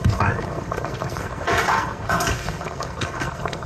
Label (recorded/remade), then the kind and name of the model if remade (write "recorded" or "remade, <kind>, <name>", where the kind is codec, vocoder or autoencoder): remade, codec, SNAC